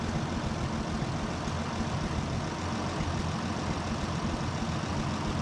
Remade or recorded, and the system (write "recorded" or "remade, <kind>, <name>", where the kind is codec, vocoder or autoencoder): recorded